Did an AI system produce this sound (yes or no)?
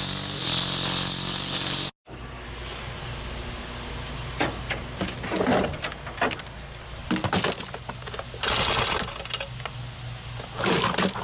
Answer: no